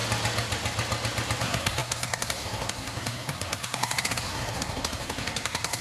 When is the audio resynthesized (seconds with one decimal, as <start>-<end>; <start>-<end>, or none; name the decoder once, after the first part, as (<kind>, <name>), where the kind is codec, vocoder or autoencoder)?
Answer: 1.4-5.8 (codec, SNAC)